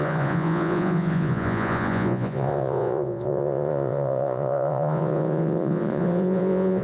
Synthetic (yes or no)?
yes